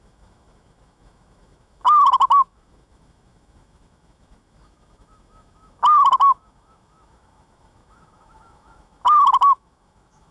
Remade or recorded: remade